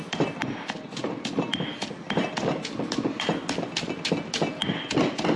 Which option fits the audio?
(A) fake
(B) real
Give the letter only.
B